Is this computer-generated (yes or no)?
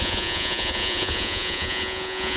yes